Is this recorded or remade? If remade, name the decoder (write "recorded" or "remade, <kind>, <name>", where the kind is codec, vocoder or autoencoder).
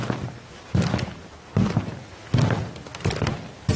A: recorded